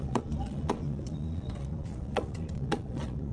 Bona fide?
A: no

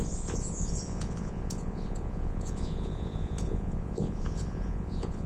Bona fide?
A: no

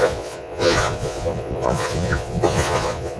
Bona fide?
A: no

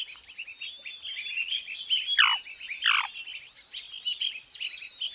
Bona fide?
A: yes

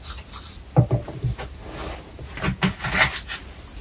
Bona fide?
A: yes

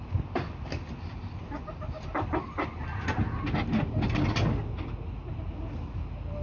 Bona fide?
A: yes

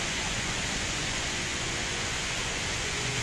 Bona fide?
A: no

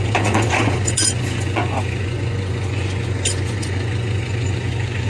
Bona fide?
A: no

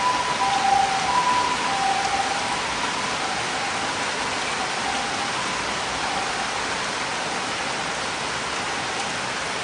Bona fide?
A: yes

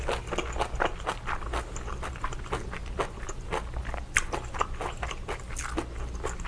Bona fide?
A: yes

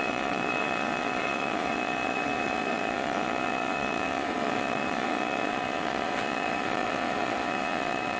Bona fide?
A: no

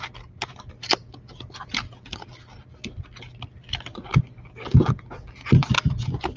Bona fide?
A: yes